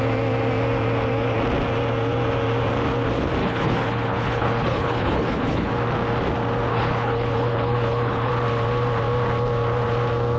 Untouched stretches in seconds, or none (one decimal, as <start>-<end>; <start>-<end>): 0.0-3.4; 5.7-6.7; 8.3-10.4